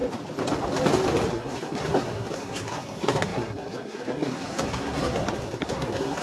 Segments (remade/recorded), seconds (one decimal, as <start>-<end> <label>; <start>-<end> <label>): 0.0-1.3 recorded; 1.3-6.2 remade